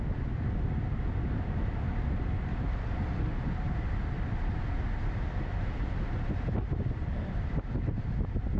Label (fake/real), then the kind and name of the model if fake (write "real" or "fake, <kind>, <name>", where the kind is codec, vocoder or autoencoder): real